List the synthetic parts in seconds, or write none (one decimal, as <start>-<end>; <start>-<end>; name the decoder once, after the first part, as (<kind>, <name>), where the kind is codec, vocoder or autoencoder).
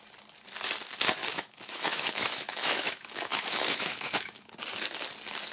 1.2-4.5 (autoencoder, DAC-VAE)